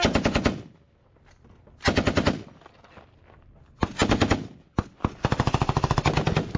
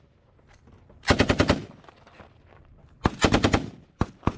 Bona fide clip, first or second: first